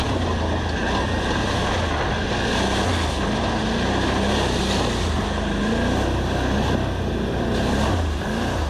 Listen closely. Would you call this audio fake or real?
real